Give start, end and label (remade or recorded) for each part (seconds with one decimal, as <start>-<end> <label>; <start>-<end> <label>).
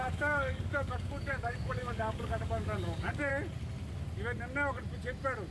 0.0-3.3 remade; 3.3-5.5 recorded